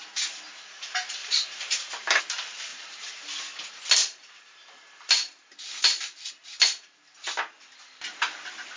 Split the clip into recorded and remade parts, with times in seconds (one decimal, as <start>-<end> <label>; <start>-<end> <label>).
0.0-1.2 recorded; 1.2-2.2 remade; 2.2-2.7 recorded; 2.7-3.4 remade; 3.4-4.0 recorded; 4.0-6.3 remade; 6.3-8.8 recorded